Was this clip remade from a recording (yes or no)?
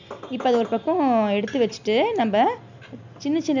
no